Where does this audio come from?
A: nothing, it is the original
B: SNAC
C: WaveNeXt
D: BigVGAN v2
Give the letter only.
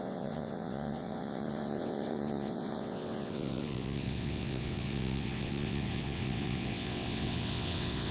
C